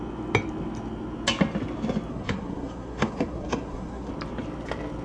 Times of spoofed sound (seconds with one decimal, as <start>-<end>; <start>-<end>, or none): 2.1-4.1